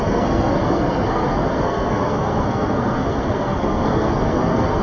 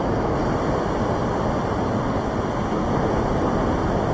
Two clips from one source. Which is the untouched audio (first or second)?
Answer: second